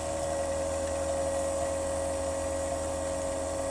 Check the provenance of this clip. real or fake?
real